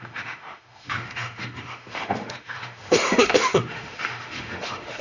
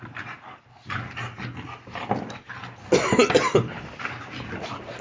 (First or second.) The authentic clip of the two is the second